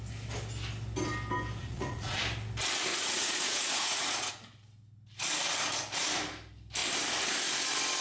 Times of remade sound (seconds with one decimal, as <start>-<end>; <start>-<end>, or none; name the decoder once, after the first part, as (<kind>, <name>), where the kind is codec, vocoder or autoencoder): 1.6-2.2 (vocoder, Vocos); 2.9-4.3